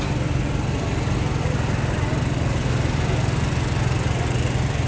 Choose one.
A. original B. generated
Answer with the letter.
A